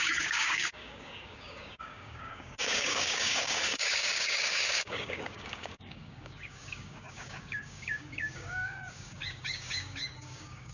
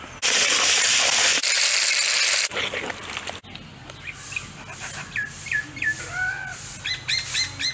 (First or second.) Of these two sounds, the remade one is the first